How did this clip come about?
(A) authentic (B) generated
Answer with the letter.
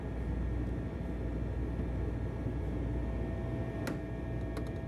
A